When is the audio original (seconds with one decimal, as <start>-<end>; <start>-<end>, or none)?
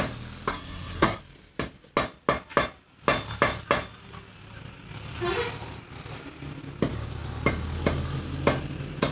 0.0-0.5; 1.2-9.1